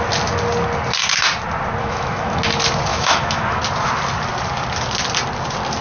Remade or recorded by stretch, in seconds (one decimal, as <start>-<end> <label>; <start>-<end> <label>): 0.0-1.8 recorded; 1.8-2.4 remade; 2.4-2.9 recorded; 2.9-3.6 remade; 3.6-5.8 recorded

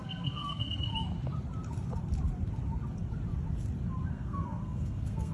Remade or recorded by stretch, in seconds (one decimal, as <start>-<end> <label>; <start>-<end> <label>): 0.0-0.9 remade; 0.9-4.1 recorded; 4.1-5.3 remade

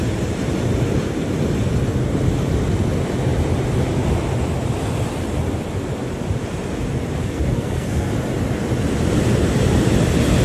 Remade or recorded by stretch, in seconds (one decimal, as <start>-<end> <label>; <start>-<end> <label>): 0.0-7.2 recorded; 7.2-8.1 remade; 8.1-10.4 recorded